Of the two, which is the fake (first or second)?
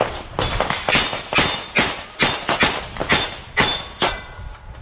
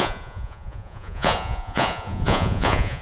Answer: second